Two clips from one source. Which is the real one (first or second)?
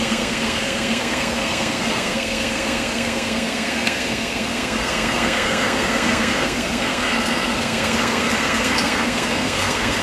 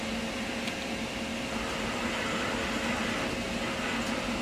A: second